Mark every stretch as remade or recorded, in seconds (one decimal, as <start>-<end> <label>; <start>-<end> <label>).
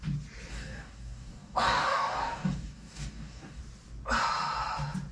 0.0-0.5 recorded; 0.5-3.6 remade; 3.6-5.1 recorded